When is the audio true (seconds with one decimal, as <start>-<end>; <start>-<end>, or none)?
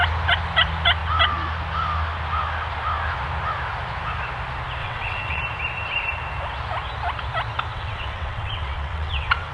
0.0-4.8; 5.4-7.7